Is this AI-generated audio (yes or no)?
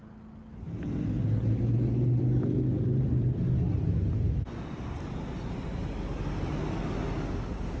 no